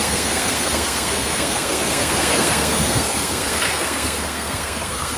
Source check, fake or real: fake